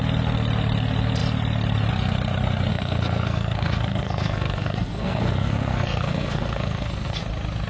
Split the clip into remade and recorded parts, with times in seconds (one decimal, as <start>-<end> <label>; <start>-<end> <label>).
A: 0.0-2.7 recorded; 2.7-7.2 remade; 7.2-7.7 recorded